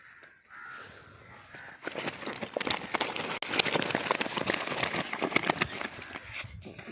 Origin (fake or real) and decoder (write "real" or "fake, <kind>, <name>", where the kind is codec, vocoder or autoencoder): real